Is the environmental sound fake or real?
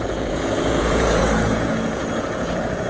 fake